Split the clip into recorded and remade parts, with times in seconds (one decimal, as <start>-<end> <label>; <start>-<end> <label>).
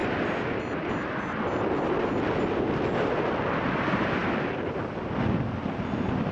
0.0-6.3 recorded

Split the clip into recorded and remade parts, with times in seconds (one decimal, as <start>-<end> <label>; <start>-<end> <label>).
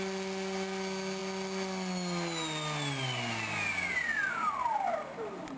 0.0-5.6 recorded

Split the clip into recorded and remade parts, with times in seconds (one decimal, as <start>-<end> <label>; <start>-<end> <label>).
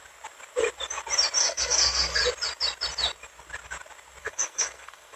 0.0-1.4 recorded; 1.4-2.2 remade; 2.2-4.2 recorded; 4.2-5.2 remade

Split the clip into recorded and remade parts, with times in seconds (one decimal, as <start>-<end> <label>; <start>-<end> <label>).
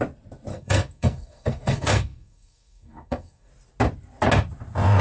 0.0-0.5 recorded; 0.5-3.5 remade; 3.5-5.0 recorded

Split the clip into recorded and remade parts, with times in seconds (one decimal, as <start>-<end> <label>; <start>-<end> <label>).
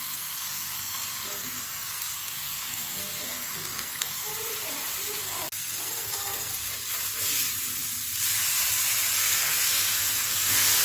0.0-4.3 remade; 4.3-5.2 recorded; 5.2-6.5 remade; 6.5-9.2 recorded; 9.2-10.8 remade